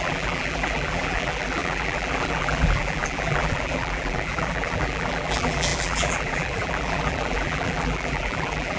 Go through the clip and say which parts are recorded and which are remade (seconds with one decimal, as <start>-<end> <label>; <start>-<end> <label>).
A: 0.0-8.8 remade